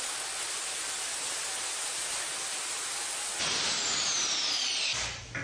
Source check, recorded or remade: recorded